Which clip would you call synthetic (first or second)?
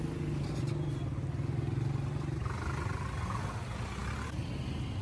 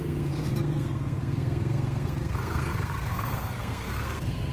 second